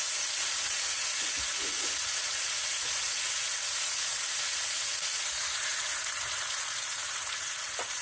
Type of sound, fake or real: fake